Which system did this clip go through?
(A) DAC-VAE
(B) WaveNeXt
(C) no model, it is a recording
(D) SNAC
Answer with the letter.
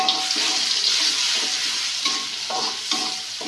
C